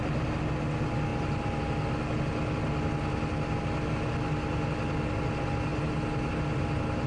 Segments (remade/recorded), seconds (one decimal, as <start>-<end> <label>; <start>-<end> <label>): 0.0-7.1 recorded